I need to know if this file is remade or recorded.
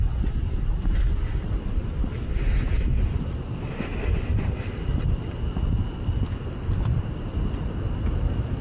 recorded